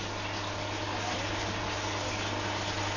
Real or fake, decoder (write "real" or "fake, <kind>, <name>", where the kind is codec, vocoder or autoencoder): real